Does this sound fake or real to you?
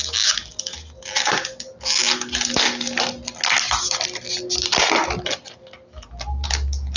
real